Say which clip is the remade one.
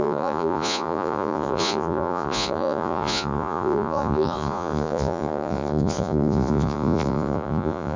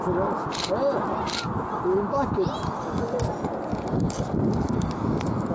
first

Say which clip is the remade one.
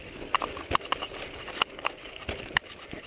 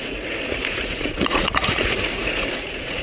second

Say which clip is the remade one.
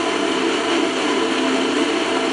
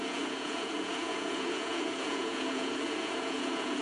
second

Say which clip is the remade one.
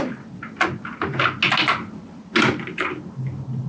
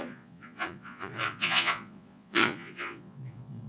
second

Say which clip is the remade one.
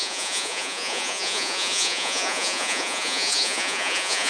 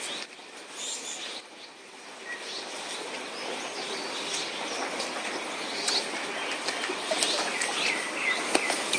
first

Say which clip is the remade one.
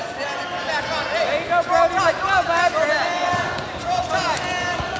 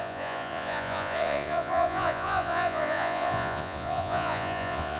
second